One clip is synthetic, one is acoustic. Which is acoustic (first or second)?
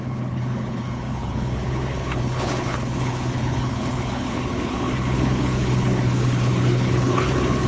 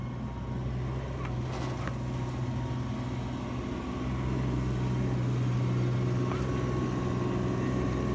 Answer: second